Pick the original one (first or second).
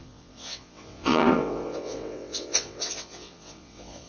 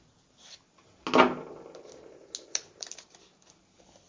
second